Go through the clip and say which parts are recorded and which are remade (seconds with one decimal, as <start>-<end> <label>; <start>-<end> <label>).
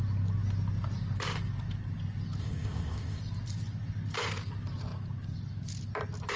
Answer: 0.0-2.4 recorded; 2.4-3.2 remade; 3.2-6.4 recorded